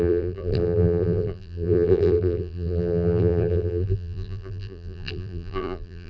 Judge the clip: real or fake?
fake